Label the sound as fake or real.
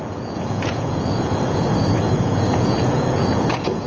fake